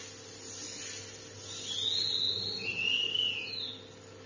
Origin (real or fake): real